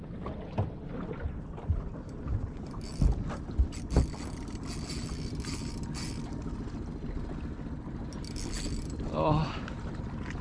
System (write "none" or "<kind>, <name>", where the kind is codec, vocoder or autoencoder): none